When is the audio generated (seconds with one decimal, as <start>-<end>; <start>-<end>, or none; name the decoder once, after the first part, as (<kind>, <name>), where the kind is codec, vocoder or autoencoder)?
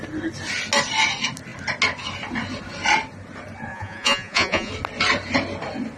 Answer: 3.7-4.7 (vocoder, Vocos)